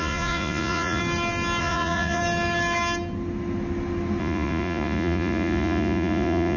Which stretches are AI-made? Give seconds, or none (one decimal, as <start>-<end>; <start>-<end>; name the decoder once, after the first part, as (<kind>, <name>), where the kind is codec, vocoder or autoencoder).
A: 0.0-1.0 (vocoder, Vocos); 1.6-2.2; 4.2-6.6